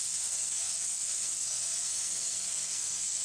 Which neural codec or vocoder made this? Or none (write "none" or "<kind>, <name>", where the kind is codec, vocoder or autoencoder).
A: codec, SNAC